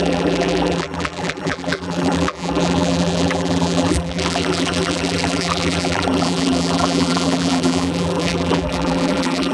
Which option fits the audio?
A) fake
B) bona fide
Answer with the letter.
A